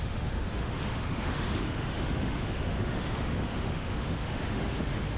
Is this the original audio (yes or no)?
no